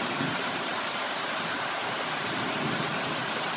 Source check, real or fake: fake